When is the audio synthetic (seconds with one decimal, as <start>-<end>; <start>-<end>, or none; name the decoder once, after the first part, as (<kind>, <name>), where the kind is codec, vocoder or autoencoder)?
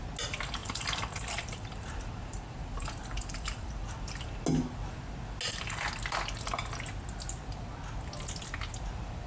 0.6-4.4 (vocoder, BigVGAN v2)